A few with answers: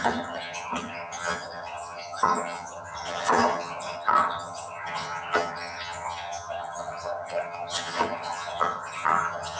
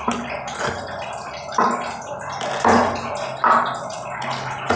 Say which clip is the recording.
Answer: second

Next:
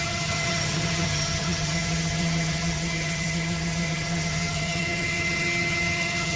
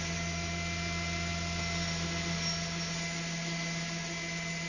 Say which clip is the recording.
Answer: second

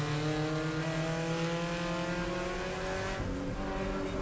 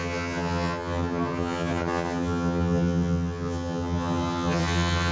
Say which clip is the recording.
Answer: first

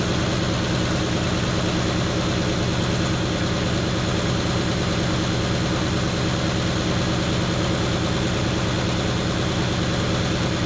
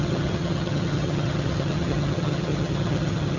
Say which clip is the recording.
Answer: first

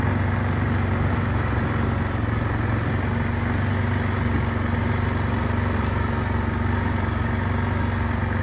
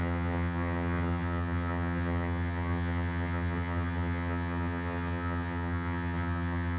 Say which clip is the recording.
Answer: first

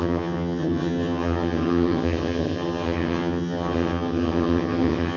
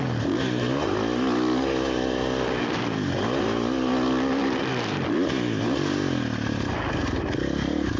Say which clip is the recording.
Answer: second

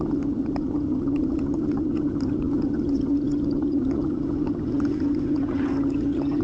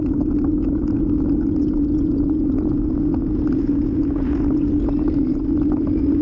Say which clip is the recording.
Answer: second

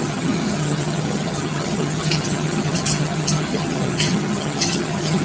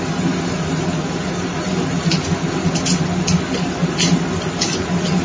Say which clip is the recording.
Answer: second